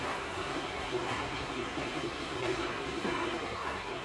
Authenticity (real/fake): fake